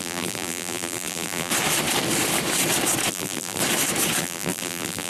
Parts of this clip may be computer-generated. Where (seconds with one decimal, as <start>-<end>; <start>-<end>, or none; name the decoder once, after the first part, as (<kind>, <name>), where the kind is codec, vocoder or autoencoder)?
0.0-1.5 (vocoder, BigVGAN v2); 3.1-3.6; 4.2-5.1